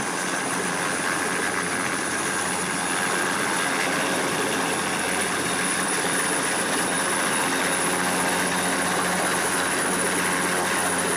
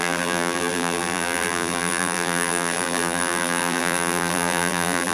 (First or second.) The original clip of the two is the first